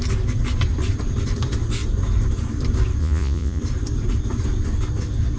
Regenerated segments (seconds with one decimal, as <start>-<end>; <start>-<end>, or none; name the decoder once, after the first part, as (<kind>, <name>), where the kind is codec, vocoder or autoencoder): 3.0-3.6 (vocoder, Vocos)

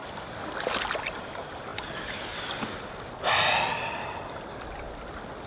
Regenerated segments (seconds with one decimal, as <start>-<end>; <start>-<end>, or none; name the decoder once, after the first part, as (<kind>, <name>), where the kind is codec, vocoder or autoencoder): none

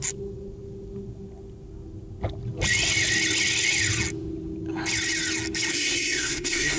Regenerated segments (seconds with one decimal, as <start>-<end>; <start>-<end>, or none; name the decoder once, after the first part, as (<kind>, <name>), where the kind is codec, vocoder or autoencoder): 5.7-6.8 (codec, SNAC)